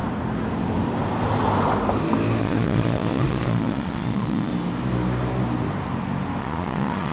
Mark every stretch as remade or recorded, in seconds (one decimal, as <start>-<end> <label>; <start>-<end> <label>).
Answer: 0.0-2.4 recorded; 2.4-4.5 remade; 4.5-6.4 recorded; 6.4-7.1 remade